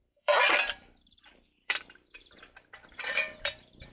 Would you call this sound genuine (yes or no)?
no